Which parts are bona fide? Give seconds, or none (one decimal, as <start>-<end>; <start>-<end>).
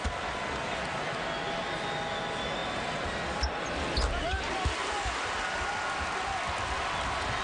0.0-7.4